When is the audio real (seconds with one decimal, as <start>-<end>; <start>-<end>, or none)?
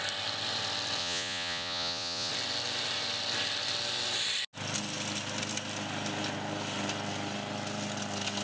0.0-1.0; 2.3-8.4